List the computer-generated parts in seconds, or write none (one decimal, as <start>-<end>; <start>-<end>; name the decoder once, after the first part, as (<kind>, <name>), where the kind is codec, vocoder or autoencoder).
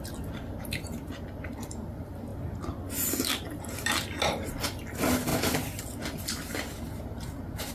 none